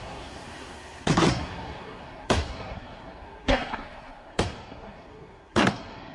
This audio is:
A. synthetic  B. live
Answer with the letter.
A